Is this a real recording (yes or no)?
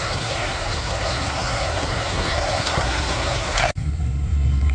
no